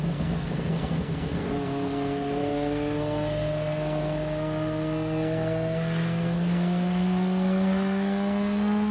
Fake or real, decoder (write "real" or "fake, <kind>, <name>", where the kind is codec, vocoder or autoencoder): fake, codec, SNAC